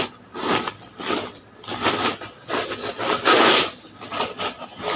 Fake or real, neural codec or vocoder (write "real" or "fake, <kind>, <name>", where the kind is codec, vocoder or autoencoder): real